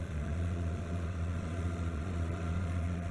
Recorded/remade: remade